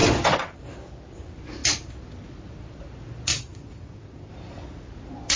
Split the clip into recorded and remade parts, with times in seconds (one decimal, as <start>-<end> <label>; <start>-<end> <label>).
0.0-0.6 remade; 0.6-3.3 recorded; 3.3-4.3 remade; 4.3-5.4 recorded